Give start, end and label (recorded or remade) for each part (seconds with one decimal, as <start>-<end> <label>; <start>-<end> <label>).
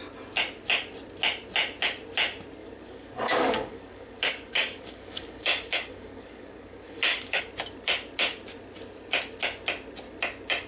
0.0-2.6 recorded; 2.6-7.4 remade; 7.4-10.7 recorded